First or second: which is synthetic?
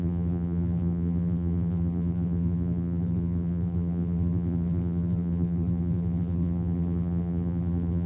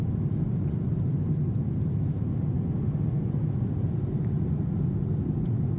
first